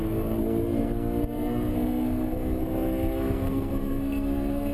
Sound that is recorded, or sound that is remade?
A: remade